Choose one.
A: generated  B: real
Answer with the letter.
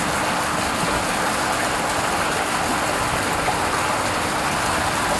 B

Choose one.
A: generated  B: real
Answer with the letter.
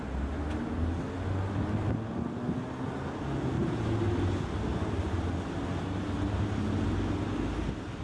B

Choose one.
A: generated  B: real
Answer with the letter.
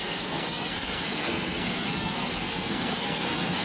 A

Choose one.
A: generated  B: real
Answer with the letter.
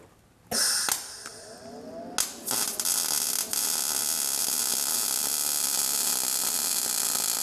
B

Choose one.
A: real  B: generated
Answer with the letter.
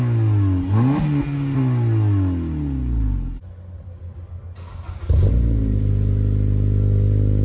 A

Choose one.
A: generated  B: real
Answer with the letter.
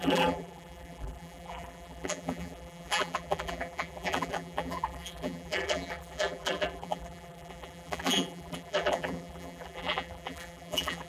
A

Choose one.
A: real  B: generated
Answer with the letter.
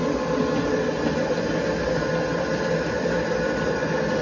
A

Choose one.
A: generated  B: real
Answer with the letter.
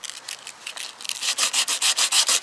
B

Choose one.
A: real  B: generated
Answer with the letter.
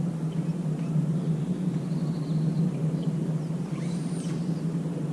A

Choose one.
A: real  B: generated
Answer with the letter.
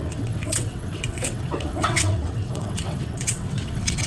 B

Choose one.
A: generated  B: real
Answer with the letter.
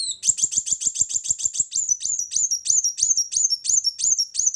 B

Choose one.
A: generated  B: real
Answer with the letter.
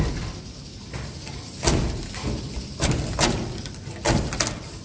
B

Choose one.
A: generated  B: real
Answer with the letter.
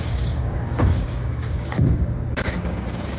A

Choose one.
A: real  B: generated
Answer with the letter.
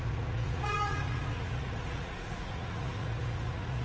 B